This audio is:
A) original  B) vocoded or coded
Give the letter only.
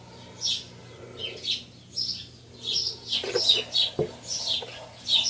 A